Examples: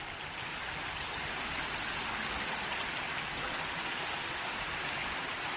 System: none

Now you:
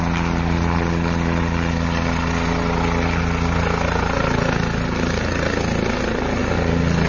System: none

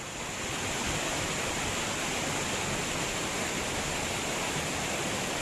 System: none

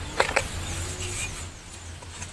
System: none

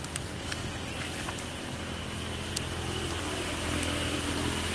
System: none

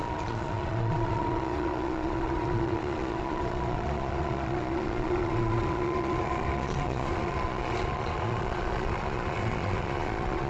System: vocoder, Vocos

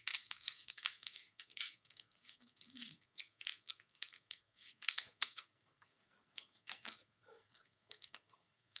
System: codec, SNAC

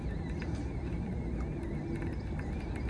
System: none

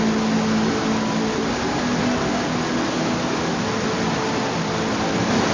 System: none